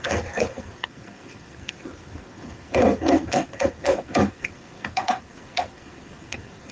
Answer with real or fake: fake